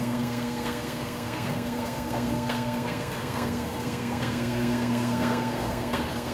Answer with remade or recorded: remade